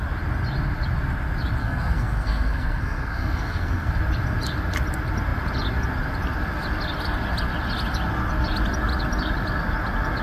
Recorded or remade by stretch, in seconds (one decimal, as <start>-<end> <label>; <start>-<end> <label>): 0.0-1.6 recorded; 1.6-4.0 remade; 4.0-10.2 recorded